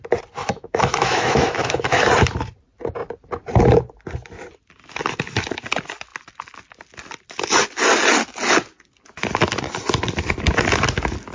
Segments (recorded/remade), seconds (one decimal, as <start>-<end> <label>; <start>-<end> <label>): 0.0-0.4 recorded; 0.4-2.0 remade; 2.0-11.3 recorded